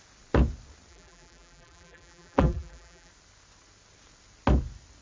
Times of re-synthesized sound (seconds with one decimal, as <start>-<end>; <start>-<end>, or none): 0.9-3.1